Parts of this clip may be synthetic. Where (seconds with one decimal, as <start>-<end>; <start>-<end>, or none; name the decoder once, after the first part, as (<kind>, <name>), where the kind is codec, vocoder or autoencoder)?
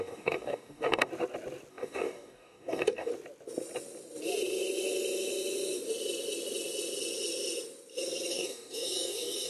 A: 0.0-1.1 (codec, DAC); 1.7-3.1; 8.3-9.5